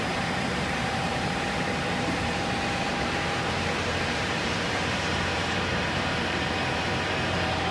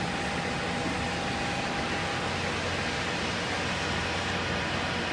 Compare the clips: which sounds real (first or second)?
second